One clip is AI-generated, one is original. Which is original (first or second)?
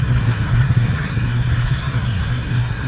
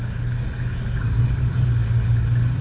second